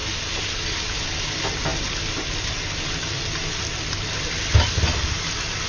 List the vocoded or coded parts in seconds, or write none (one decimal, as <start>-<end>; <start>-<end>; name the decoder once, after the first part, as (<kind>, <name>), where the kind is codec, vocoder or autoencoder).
none